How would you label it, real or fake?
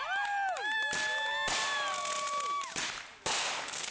real